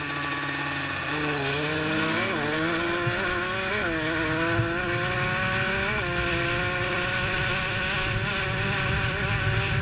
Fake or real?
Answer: real